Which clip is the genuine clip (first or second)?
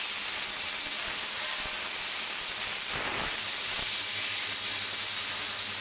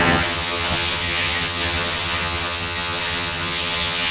first